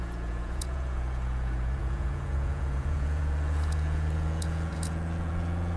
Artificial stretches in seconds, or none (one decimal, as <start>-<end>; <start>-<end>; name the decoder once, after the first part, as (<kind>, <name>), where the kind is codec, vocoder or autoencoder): 0.0-5.8 (vocoder, Vocos)